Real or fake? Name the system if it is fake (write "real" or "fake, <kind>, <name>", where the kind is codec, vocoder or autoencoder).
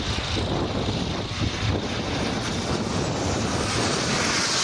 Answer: real